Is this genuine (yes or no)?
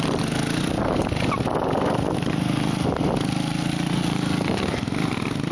yes